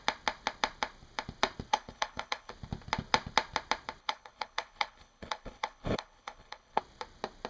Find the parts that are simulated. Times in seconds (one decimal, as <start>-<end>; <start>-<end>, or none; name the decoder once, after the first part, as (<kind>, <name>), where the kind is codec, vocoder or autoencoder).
1.7-2.5 (codec, HILCodec); 4.0-6.8